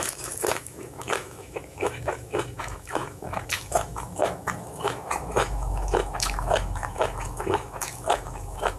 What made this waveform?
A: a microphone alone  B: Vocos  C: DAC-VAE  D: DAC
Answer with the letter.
C